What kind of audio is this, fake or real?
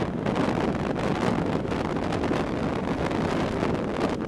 real